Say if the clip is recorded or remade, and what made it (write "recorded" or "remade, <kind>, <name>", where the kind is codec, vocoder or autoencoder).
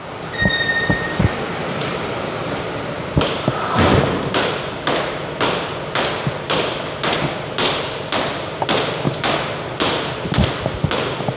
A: recorded